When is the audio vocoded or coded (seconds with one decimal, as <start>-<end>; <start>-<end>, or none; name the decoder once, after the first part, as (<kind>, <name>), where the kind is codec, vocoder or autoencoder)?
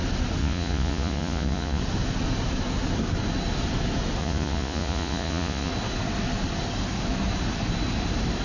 0.4-1.8 (vocoder, Vocos); 4.2-5.7